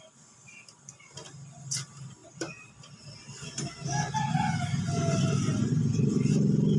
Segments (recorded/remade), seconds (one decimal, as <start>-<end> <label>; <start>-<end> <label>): 0.0-6.8 recorded